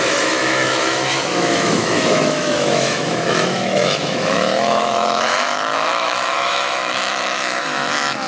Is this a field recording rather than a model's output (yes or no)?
no